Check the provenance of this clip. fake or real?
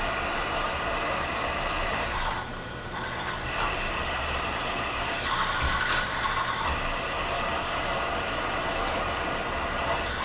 fake